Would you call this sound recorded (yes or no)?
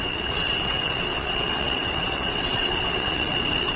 no